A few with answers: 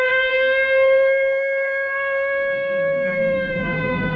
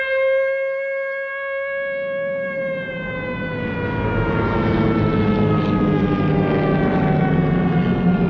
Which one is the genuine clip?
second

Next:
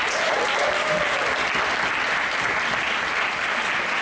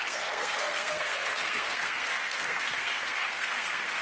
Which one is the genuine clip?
first